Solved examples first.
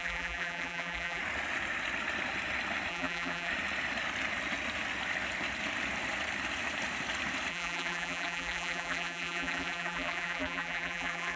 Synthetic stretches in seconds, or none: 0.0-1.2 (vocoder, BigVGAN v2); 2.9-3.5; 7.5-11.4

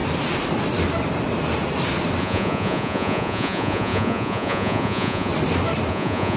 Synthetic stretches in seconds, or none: 2.2-5.3 (vocoder, Vocos); 5.9-6.4

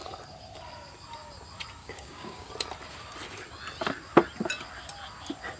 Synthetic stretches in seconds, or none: 1.8-2.5 (codec, DAC)

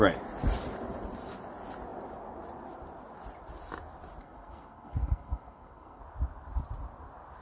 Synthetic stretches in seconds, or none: 4.2-6.0 (codec, SNAC)